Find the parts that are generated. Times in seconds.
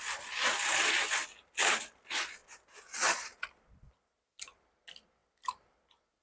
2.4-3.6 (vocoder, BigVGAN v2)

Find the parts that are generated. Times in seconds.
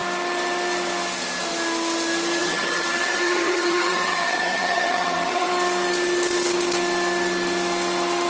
2.4-5.5 (vocoder, HiFi-GAN)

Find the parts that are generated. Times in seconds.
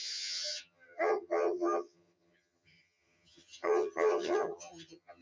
0.0-5.2 (vocoder, HiFi-GAN)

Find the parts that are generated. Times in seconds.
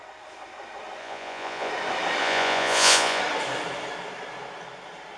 1.0-1.7 (vocoder, Vocos); 2.2-3.2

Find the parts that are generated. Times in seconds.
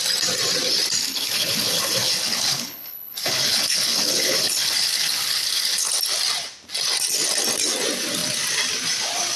1.0-6.0 (codec, HILCodec)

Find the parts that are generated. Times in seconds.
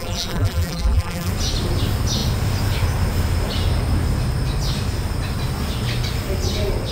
0.0-1.3 (vocoder, BigVGAN v2)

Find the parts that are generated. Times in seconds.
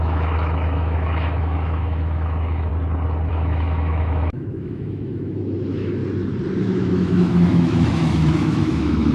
0.0-2.7 (autoencoder, DAC-VAE); 3.3-6.0; 6.6-9.1